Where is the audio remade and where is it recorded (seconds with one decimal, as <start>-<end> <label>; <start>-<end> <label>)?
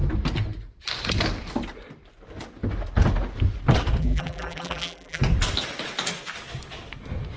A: 0.0-4.0 recorded; 4.0-5.2 remade; 5.2-7.4 recorded